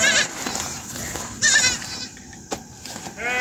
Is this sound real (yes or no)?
yes